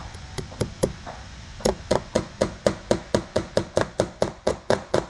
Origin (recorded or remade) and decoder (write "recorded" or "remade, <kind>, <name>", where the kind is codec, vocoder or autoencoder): remade, vocoder, Vocos